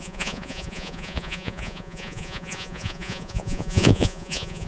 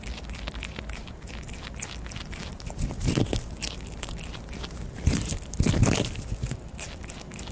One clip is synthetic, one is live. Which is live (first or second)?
second